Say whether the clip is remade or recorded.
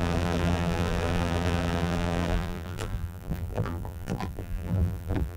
remade